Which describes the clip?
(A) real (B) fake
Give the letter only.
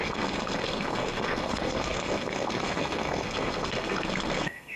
B